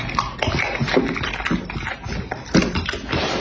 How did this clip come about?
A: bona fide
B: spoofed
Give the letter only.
A